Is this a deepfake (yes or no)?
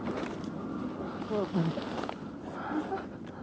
no